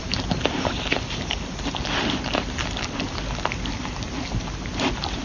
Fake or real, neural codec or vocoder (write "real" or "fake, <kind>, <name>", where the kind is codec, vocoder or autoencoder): real